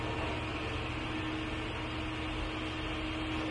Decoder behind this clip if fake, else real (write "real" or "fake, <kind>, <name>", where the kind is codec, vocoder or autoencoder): real